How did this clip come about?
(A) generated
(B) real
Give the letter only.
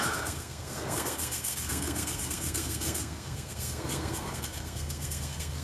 A